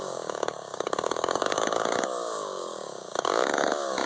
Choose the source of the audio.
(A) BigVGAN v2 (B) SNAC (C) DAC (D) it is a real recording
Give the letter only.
C